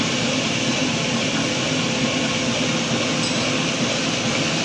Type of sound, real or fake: real